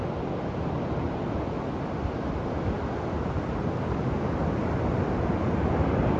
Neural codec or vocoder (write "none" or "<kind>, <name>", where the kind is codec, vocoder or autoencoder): none